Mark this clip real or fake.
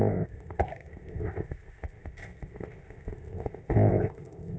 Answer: fake